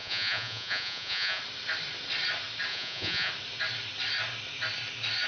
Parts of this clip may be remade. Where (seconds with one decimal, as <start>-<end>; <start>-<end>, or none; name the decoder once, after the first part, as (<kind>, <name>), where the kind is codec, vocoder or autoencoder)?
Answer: 0.0-1.4 (vocoder, Vocos); 2.7-3.3